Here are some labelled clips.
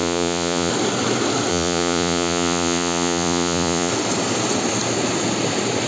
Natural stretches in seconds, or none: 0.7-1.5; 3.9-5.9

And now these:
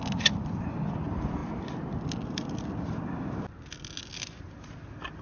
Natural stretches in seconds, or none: 0.0-5.2